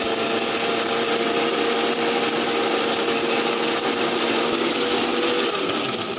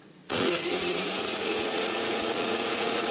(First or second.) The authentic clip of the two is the first